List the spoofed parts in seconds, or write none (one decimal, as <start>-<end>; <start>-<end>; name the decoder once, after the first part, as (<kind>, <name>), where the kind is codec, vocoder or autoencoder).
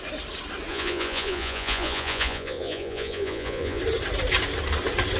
0.7-3.8 (vocoder, Vocos)